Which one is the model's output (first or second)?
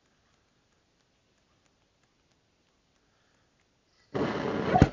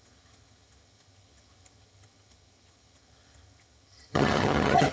second